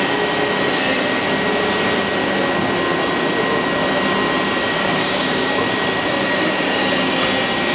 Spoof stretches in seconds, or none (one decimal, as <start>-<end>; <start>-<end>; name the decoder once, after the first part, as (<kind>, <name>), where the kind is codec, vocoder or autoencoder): 4.7-5.5 (codec, DAC)